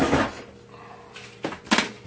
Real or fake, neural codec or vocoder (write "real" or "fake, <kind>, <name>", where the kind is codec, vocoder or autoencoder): real